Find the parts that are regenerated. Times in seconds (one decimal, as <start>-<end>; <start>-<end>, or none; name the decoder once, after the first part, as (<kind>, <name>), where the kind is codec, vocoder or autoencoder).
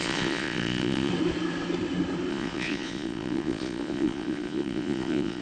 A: 0.0-1.1 (vocoder, Vocos); 2.3-5.4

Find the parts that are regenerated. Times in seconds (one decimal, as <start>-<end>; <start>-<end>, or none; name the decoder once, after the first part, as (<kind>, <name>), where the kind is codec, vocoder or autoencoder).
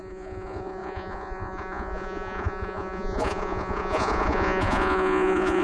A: 0.0-5.6 (vocoder, Vocos)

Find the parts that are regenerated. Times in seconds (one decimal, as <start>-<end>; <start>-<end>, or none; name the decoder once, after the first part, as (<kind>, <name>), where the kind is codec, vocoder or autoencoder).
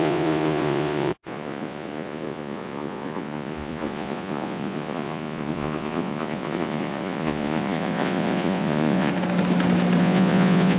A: 0.0-9.1 (vocoder, Vocos); 10.0-10.8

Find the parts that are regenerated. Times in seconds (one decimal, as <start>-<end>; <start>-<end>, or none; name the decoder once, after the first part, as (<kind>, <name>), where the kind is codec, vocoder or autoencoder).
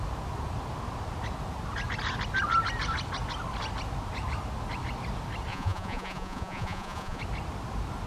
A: 5.5-7.2 (vocoder, Vocos)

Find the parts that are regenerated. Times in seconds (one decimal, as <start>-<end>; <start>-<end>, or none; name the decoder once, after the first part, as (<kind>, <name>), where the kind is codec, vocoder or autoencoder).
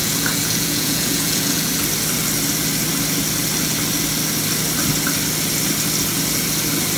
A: 0.0-1.7 (vocoder, Vocos)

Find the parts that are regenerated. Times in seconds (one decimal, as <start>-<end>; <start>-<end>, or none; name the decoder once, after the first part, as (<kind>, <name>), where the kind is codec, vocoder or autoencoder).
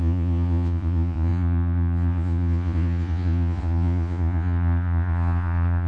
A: 0.0-5.9 (vocoder, Vocos)